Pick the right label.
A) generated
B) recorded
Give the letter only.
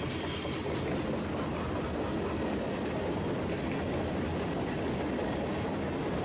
B